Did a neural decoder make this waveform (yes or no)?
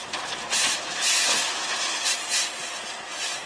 no